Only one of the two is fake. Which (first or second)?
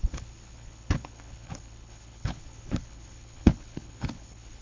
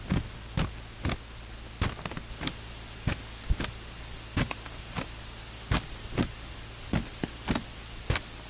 first